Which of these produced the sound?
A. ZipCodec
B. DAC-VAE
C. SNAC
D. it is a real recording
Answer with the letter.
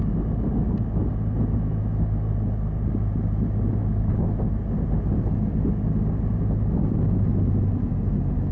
D